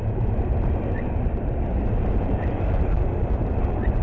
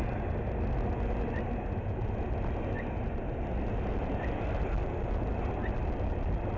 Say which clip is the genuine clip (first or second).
second